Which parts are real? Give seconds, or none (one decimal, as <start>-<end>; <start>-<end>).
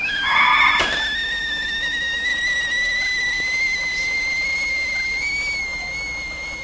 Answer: 0.5-1.4; 2.3-5.6